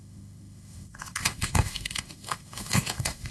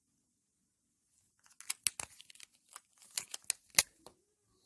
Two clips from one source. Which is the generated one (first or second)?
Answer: first